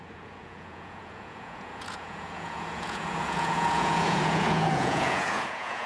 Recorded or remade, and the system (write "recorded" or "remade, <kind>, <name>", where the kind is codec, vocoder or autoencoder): remade, vocoder, Vocos